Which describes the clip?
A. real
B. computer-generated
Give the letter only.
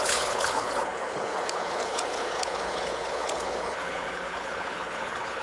B